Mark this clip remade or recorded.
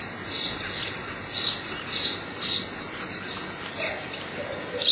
recorded